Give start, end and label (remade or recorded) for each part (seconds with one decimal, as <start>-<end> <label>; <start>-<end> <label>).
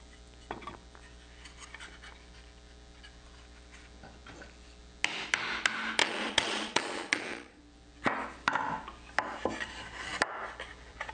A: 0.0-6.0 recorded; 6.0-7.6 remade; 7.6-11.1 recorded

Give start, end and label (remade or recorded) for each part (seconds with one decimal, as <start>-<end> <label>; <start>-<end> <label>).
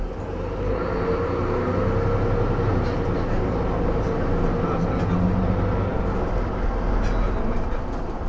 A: 0.0-8.3 recorded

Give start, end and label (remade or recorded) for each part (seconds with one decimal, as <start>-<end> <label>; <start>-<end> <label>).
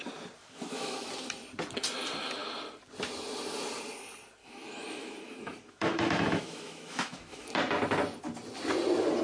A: 0.0-0.4 recorded; 0.4-1.1 remade; 1.1-4.4 recorded; 4.4-7.5 remade; 7.5-9.2 recorded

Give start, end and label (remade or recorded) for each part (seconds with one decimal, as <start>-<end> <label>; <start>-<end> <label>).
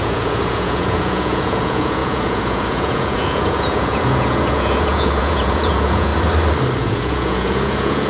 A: 0.0-6.1 remade; 6.1-6.8 recorded; 6.8-8.1 remade